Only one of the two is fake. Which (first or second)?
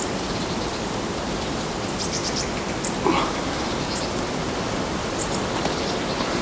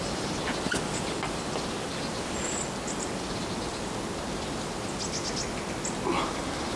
first